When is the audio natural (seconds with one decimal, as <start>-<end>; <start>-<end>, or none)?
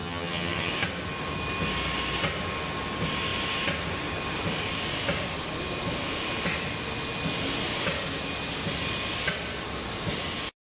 0.7-10.7